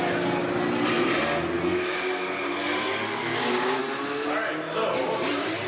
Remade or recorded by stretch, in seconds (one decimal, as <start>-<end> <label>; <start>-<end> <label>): 0.0-1.7 recorded; 1.7-2.3 remade; 2.3-3.3 recorded; 3.3-3.8 remade; 3.8-5.7 recorded